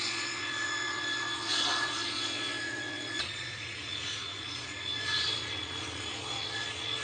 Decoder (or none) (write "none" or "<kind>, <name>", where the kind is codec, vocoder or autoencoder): vocoder, Vocos